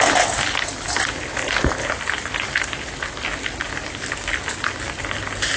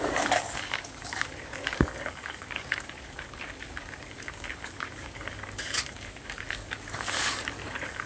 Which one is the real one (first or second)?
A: first